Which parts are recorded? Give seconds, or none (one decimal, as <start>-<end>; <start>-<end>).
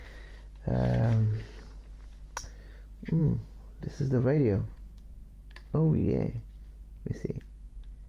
0.0-8.1